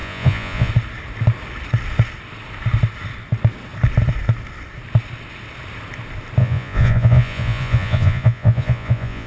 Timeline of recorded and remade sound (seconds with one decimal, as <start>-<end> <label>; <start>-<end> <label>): 0.0-0.7 remade; 0.7-6.4 recorded; 6.4-9.3 remade